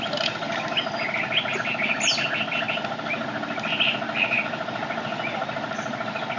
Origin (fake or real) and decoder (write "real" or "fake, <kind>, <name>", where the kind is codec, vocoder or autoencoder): real